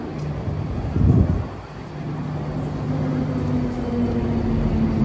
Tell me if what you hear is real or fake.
real